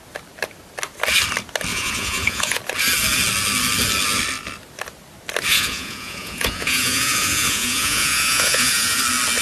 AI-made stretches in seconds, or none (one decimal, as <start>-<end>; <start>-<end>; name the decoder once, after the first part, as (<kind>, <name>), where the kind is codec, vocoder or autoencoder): 1.7-2.6 (vocoder, Vocos); 5.5-9.0